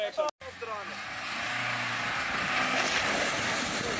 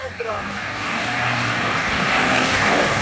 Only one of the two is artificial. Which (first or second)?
second